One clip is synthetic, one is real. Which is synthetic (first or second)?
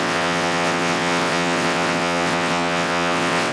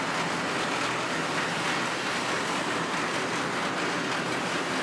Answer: first